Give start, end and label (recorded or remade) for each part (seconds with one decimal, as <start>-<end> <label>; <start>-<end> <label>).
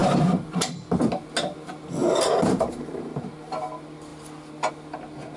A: 0.0-1.1 remade; 1.1-2.0 recorded; 2.0-3.6 remade; 3.6-5.4 recorded